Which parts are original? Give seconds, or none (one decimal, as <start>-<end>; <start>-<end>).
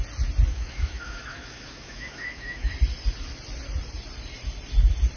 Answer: 0.0-0.5; 2.7-5.2